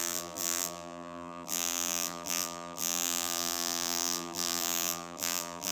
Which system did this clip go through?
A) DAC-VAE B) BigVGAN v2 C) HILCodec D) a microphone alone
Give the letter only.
B